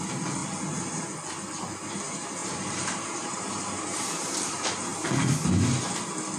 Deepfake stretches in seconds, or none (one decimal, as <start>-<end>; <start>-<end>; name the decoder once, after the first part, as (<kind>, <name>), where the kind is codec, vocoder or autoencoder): 2.4-4.5 (vocoder, BigVGAN v2)

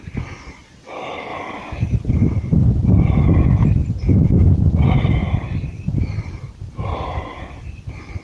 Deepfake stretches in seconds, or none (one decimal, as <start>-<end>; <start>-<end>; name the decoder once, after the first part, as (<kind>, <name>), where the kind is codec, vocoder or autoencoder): 2.5-3.0 (vocoder, BigVGAN v2); 5.2-5.7

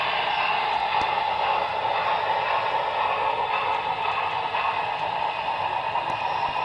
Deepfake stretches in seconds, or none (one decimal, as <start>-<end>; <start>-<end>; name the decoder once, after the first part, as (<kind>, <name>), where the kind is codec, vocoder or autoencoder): 0.0-1.1 (vocoder, BigVGAN v2); 5.1-6.6

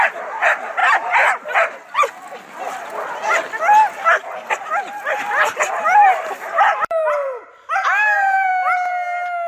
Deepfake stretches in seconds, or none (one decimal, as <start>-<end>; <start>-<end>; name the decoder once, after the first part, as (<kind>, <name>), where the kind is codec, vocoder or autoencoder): 0.0-0.8 (vocoder, BigVGAN v2); 4.5-8.5

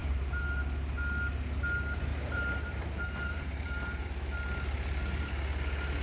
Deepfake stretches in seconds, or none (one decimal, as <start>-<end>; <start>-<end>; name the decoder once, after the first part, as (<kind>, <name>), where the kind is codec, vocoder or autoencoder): 0.0-0.6 (vocoder, BigVGAN v2); 2.1-5.3